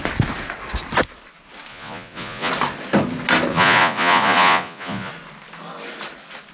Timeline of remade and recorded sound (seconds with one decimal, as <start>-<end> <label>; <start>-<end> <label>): 0.0-1.7 recorded; 1.7-2.5 remade; 2.5-3.5 recorded; 3.5-5.1 remade; 5.1-6.5 recorded